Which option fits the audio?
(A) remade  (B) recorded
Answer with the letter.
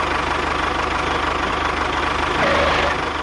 B